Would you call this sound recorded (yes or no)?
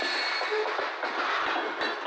yes